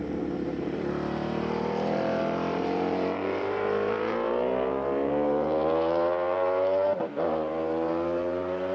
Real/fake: fake